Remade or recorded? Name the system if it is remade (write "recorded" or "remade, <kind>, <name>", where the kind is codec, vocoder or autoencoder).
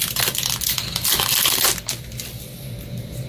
recorded